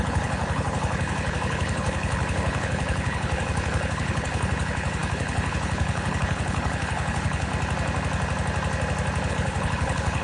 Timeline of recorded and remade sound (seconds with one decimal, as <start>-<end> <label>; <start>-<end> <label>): 0.0-7.5 remade; 7.5-9.3 recorded; 9.3-10.2 remade

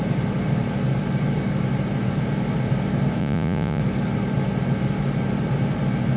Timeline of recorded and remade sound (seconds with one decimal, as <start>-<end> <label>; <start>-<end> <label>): 0.0-3.2 recorded; 3.2-3.8 remade; 3.8-6.2 recorded

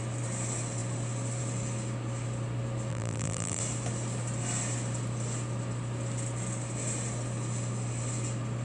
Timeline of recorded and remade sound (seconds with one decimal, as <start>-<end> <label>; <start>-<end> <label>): 0.0-2.9 recorded; 2.9-3.6 remade; 3.6-8.6 recorded

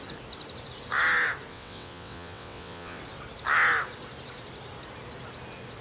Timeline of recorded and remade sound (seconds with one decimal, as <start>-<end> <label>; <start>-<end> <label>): 0.0-1.5 recorded; 1.5-3.0 remade; 3.0-5.8 recorded

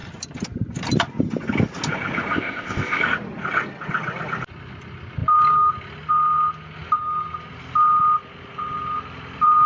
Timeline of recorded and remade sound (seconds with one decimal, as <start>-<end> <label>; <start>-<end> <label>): 0.0-2.3 recorded; 2.3-3.0 remade; 3.0-9.7 recorded